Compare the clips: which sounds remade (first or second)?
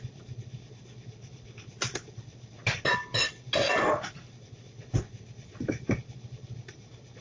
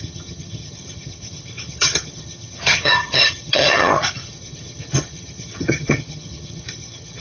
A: second